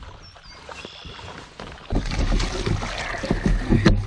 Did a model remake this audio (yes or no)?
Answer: no